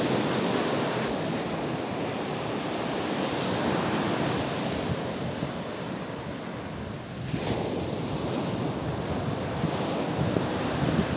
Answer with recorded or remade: recorded